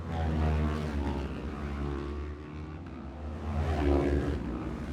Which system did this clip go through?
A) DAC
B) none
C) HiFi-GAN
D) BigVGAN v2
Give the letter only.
B